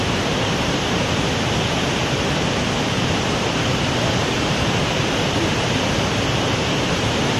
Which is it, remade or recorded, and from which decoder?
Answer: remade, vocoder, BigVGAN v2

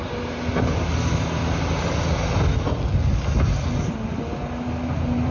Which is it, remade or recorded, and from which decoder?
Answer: recorded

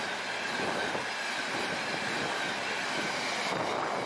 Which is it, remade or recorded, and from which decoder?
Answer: recorded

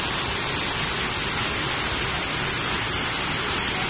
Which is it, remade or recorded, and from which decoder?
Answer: recorded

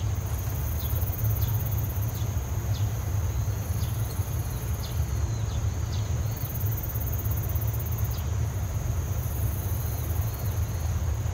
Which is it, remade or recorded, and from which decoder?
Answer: recorded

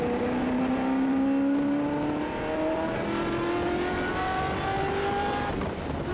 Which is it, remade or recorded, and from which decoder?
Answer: recorded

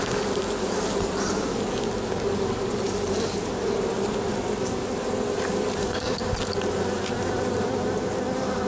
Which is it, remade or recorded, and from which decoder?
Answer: recorded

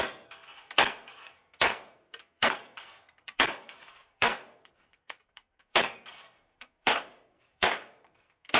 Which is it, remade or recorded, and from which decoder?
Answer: remade, codec, SNAC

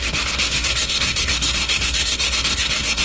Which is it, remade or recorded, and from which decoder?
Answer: remade, codec, SNAC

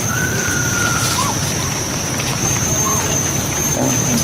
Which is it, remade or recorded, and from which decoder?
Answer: remade, vocoder, BigVGAN v2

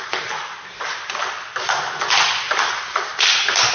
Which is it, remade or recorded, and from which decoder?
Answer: recorded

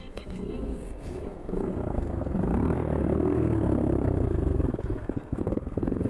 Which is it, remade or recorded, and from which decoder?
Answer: remade, codec, SNAC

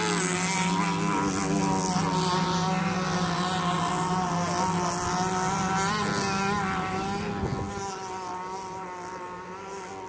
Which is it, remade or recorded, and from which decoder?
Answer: recorded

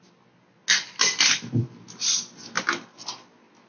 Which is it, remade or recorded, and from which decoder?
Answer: recorded